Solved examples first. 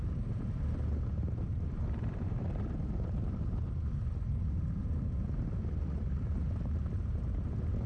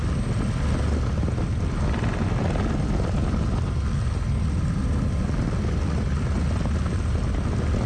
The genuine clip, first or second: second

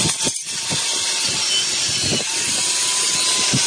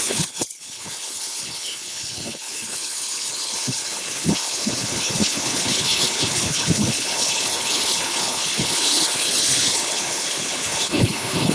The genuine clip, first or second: first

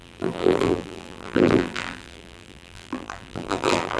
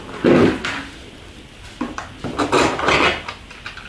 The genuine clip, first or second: second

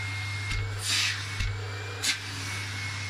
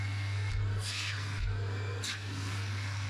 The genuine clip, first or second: first